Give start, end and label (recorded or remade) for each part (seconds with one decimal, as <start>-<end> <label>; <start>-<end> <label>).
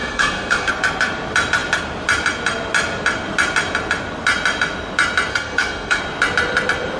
0.0-0.7 remade; 0.7-5.3 recorded; 5.3-6.0 remade; 6.0-7.0 recorded